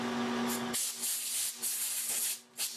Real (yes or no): yes